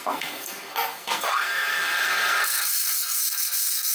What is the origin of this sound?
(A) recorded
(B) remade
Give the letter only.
B